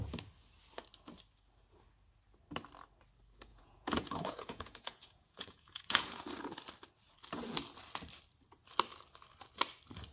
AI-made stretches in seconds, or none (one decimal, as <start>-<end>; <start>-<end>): 3.5-6.3